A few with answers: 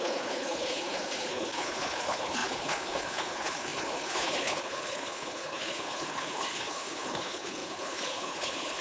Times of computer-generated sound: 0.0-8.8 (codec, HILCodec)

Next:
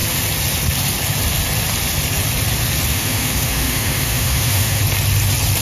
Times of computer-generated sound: 2.9-4.8 (autoencoder, DAC-VAE)

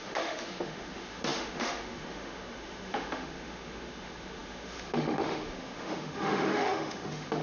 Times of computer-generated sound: 0.0-7.4 (autoencoder, DAC-VAE)

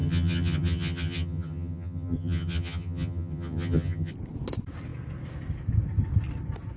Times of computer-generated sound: 0.0-4.1 (vocoder, HiFi-GAN)